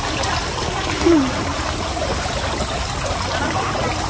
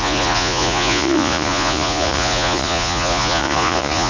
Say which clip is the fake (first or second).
second